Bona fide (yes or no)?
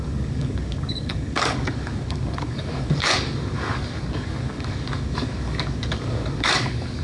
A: no